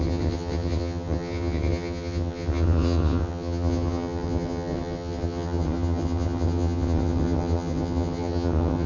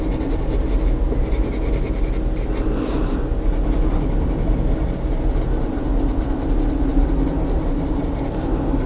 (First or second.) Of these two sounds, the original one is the second